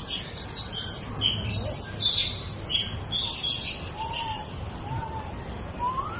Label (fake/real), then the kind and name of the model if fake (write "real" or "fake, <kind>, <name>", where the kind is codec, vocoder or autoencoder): real